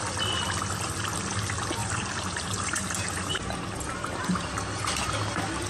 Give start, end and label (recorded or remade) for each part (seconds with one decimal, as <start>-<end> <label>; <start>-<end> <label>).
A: 0.0-1.8 recorded; 1.8-4.5 remade; 4.5-5.7 recorded